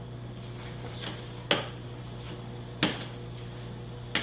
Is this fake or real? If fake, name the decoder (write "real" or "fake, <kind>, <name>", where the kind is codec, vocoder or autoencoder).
real